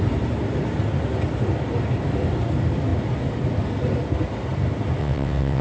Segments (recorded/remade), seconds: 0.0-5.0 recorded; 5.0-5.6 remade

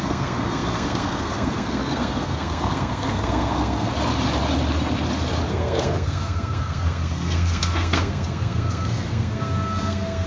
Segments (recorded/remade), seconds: 0.0-3.9 remade; 3.9-5.5 recorded; 5.5-10.3 remade

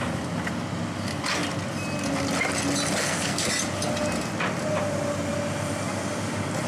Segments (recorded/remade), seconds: 0.0-3.0 recorded; 3.0-3.5 remade; 3.5-6.7 recorded

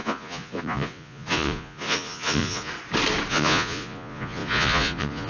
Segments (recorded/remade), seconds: 0.0-2.7 remade; 2.7-3.3 recorded; 3.3-5.3 remade